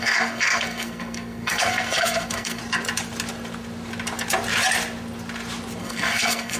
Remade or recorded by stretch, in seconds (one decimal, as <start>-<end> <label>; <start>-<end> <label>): 0.0-2.6 remade; 2.6-5.8 recorded; 5.8-6.6 remade